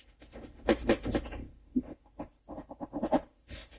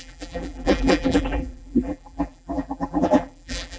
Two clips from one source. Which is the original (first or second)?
first